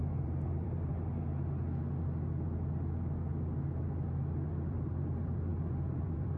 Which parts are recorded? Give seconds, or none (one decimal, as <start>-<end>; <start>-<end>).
0.9-4.7; 5.5-6.0

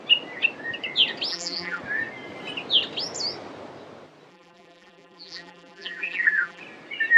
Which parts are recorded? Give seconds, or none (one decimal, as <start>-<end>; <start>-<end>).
0.0-1.3; 1.8-4.3; 6.6-7.2

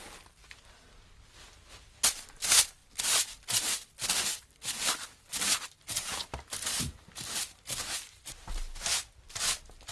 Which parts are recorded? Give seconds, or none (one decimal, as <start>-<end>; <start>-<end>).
0.0-9.9

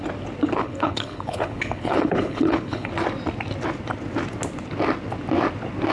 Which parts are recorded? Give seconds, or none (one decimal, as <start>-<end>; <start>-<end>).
0.0-0.6; 2.9-5.9

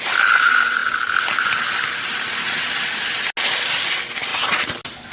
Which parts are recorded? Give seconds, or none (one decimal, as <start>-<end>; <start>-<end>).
0.0-5.1